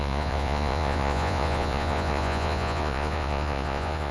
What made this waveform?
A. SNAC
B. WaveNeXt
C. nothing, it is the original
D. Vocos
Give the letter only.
D